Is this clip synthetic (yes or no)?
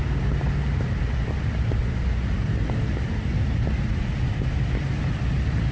no